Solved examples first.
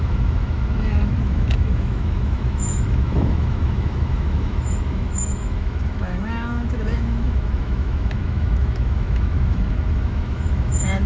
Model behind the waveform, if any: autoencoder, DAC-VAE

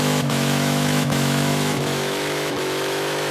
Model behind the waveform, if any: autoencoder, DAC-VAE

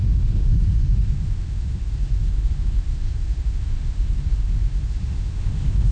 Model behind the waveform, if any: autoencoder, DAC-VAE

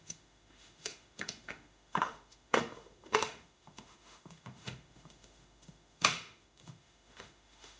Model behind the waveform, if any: autoencoder, DAC-VAE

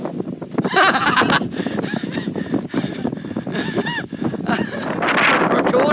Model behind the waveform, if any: none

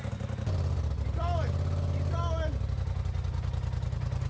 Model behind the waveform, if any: none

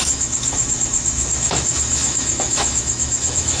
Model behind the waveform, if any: autoencoder, DAC-VAE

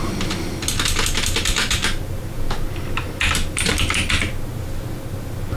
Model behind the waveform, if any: none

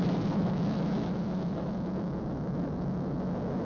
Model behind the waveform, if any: autoencoder, DAC-VAE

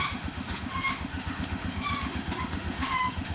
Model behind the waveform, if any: autoencoder, DAC-VAE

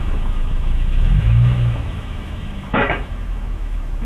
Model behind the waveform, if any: autoencoder, DAC-VAE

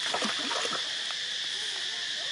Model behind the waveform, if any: none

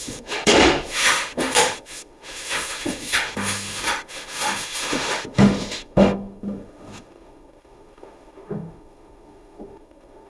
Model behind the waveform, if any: autoencoder, DAC-VAE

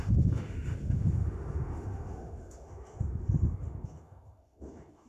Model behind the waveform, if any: autoencoder, DAC-VAE